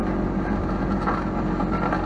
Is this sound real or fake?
real